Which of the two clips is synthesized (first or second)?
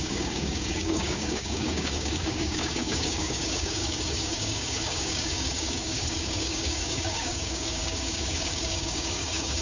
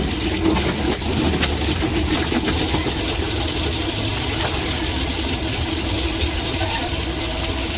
first